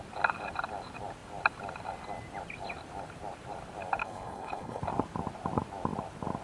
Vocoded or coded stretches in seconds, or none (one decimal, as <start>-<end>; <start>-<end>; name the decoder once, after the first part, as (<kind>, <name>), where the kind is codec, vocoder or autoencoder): 4.0-4.8 (codec, HILCodec)